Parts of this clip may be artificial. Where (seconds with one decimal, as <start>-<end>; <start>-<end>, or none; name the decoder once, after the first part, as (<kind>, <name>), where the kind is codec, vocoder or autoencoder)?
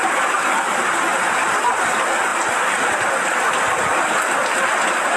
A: 0.0-0.9 (vocoder, BigVGAN v2)